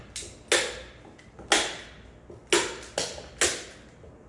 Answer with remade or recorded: recorded